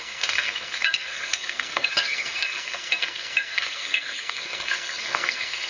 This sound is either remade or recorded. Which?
remade